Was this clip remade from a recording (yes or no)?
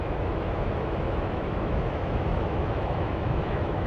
yes